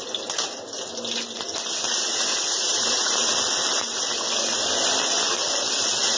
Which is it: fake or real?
real